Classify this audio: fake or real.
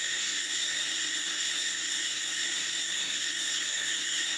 fake